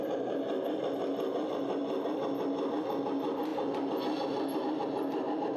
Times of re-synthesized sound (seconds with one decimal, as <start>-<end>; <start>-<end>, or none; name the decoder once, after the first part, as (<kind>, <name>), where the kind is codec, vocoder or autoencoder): none